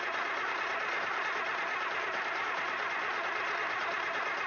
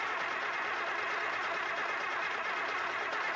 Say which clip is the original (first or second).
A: second